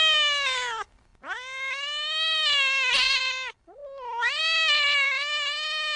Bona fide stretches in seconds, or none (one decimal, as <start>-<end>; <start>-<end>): 0.0-6.0

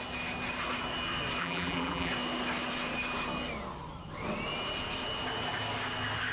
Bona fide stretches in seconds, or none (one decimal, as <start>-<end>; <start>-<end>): 0.0-1.4; 2.1-6.3

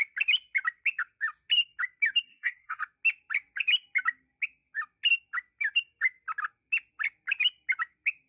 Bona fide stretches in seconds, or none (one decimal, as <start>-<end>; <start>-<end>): 0.0-2.3; 2.8-8.3

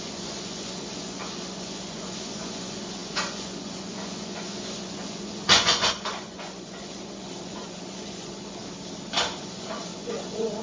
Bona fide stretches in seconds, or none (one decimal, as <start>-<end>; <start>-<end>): 8.6-9.4

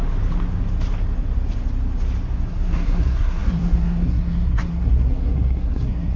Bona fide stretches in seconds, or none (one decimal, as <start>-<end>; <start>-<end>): 0.0-2.5

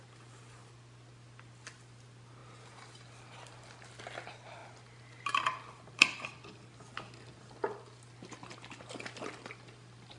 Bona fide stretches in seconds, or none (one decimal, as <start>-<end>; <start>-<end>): 0.6-1.1

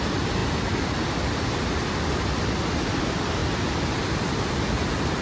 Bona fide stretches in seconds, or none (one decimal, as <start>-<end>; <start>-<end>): 0.0-5.2